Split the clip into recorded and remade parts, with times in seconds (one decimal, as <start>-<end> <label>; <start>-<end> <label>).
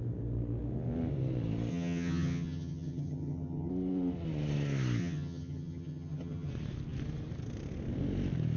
0.0-1.7 recorded; 1.7-3.7 remade; 3.7-5.0 recorded; 5.0-6.5 remade; 6.5-8.6 recorded